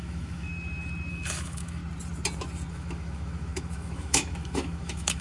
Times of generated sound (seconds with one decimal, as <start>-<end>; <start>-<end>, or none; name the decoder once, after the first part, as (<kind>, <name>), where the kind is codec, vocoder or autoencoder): 0.0-0.5 (autoencoder, DAC-VAE); 1.1-1.8; 2.7-5.2